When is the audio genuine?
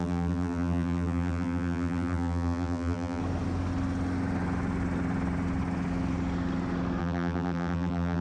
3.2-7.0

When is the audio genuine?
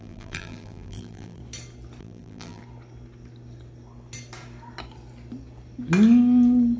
1.4-2.0; 2.6-6.8